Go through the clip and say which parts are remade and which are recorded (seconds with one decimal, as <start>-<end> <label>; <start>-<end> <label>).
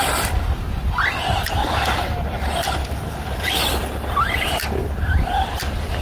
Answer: 0.0-6.0 recorded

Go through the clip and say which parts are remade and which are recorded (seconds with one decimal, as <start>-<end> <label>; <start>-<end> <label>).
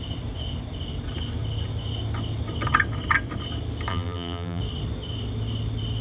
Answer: 0.0-3.9 recorded; 3.9-4.6 remade; 4.6-6.0 recorded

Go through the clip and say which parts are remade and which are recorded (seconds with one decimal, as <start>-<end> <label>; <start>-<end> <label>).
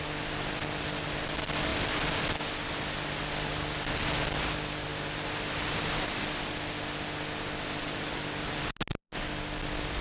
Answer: 0.0-10.0 recorded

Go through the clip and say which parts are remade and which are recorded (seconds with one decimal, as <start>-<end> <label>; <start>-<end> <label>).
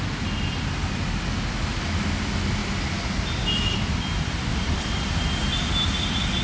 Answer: 0.0-4.5 recorded; 4.5-5.1 remade; 5.1-6.4 recorded